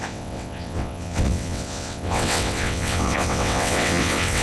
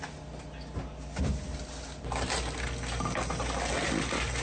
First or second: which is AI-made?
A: first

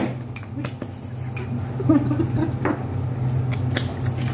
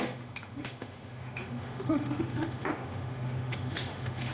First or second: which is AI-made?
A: second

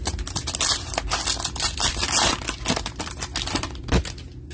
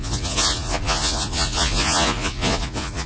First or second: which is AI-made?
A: second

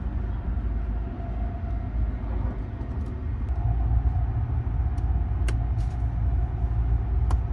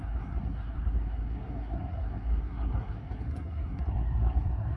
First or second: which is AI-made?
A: second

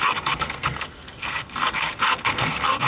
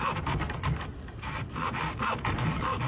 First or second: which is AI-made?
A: first